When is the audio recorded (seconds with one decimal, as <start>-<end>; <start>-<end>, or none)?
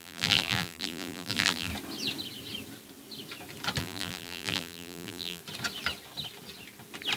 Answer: 1.7-3.8; 5.4-7.2